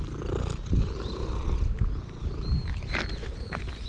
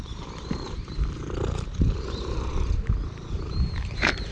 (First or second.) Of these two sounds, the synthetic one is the second